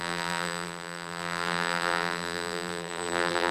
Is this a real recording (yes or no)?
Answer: no